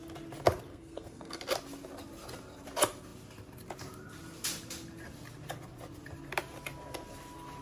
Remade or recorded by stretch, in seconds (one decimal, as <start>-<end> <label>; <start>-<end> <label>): 0.0-0.7 recorded; 0.7-1.4 remade; 1.4-7.6 recorded